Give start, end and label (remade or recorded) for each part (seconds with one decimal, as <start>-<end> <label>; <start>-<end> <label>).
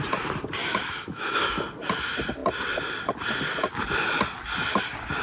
0.0-0.6 recorded; 0.6-1.5 remade; 1.5-5.2 recorded